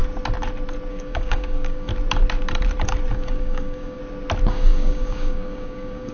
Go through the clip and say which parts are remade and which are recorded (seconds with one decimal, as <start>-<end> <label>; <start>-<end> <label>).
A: 0.0-0.9 recorded; 0.9-1.9 remade; 1.9-3.1 recorded; 3.1-4.0 remade; 4.0-4.5 recorded; 4.5-6.1 remade